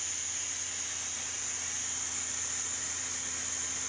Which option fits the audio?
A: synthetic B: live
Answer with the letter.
B